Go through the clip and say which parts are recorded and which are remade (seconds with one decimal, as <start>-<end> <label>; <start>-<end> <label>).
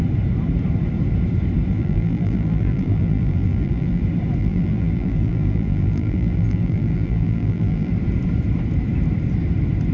0.0-1.7 recorded; 1.7-4.0 remade; 4.0-4.4 recorded; 4.4-7.9 remade; 7.9-9.9 recorded